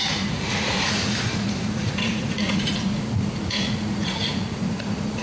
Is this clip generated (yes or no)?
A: yes